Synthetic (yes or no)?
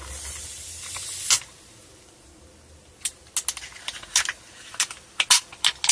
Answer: no